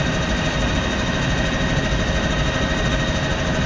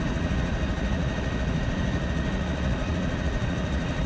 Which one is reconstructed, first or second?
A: second